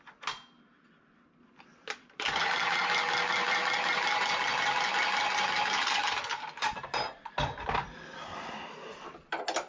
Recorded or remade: recorded